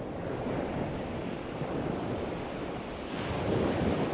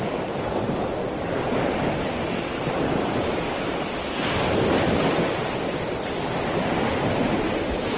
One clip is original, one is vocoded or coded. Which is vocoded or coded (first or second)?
second